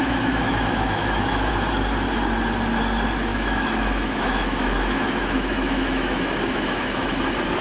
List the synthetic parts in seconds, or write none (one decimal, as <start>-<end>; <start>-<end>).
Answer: 0.0-1.5; 3.3-7.1